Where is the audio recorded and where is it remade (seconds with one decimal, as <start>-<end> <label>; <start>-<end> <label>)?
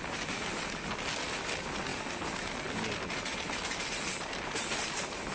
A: 0.0-5.3 recorded